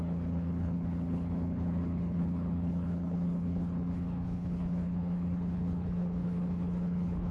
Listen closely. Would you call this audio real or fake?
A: fake